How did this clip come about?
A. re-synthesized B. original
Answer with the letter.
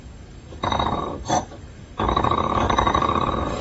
A